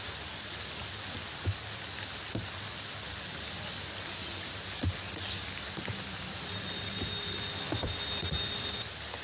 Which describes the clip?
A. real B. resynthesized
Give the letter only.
A